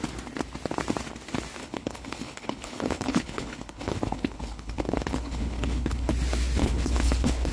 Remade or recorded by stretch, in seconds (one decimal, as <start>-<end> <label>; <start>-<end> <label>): 0.0-1.6 recorded; 1.6-6.1 remade; 6.1-6.6 recorded; 6.6-7.5 remade